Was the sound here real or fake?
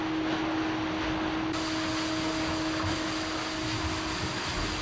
real